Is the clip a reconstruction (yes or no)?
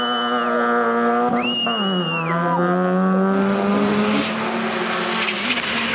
no